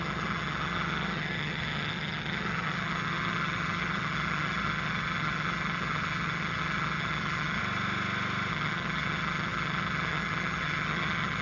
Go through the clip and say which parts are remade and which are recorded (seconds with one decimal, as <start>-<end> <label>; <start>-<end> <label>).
0.0-7.6 remade; 7.6-8.5 recorded; 8.5-11.4 remade